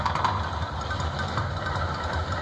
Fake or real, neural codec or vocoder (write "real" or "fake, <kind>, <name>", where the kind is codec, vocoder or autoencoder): real